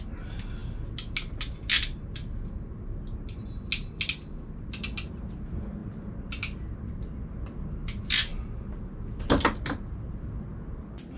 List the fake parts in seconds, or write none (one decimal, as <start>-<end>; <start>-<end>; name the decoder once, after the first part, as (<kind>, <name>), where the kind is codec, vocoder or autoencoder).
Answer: none